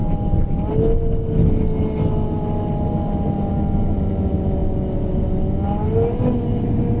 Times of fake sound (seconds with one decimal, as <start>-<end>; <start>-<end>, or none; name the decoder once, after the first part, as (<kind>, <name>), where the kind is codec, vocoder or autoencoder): none